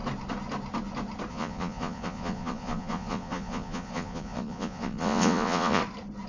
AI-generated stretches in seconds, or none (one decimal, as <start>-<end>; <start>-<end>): 1.3-5.8

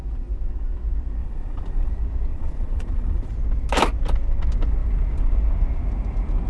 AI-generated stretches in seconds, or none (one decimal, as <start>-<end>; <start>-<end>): 1.2-1.9; 2.3-3.3

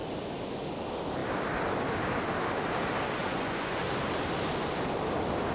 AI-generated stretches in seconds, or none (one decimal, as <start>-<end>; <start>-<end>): 3.2-3.8